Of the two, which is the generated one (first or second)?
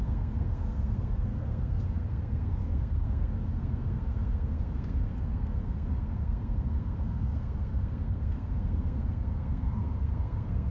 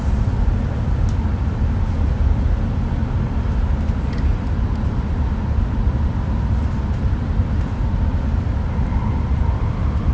first